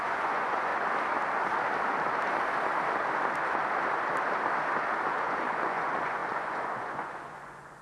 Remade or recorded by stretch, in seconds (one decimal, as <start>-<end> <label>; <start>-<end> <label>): 0.0-0.7 remade; 0.7-5.1 recorded; 5.1-7.8 remade